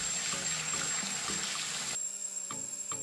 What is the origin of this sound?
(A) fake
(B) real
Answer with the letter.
B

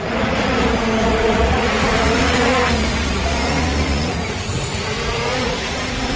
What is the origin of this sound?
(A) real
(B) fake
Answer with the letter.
B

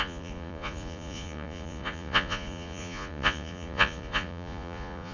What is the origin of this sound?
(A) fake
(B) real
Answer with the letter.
A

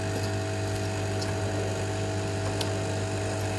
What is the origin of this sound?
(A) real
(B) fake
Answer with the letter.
A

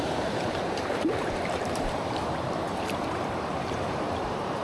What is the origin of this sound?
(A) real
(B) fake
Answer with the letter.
B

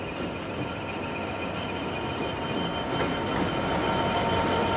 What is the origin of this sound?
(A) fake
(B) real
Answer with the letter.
B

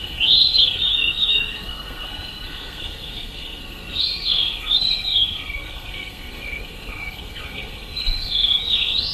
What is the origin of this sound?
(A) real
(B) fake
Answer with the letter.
B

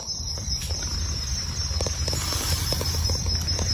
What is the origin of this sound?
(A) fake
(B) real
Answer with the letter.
B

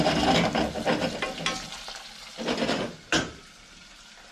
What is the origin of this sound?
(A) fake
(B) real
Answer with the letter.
B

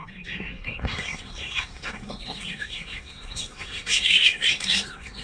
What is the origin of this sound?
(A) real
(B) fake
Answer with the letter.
B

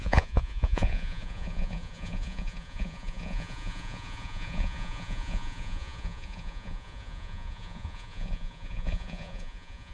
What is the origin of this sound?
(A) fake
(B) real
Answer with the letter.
A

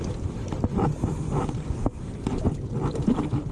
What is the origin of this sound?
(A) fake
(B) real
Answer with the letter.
B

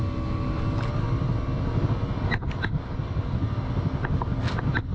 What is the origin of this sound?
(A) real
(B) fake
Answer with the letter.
A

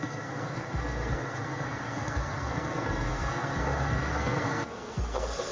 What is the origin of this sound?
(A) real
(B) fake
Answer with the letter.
B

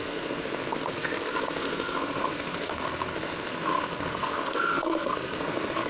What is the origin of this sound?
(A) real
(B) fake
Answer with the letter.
B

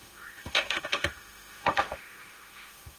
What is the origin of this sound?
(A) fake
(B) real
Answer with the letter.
A